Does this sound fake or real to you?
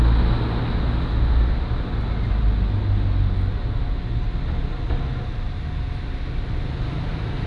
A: real